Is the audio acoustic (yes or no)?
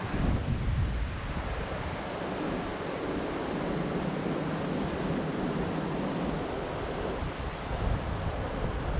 yes